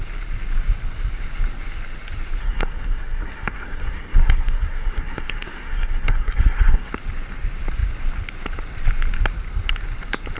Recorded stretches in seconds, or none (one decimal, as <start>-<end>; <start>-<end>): 0.0-2.4; 6.9-10.4